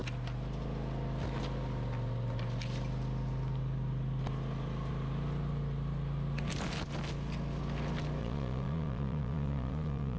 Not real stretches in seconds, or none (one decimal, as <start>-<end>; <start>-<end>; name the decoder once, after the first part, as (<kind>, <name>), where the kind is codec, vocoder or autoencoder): 8.2-10.2 (vocoder, Vocos)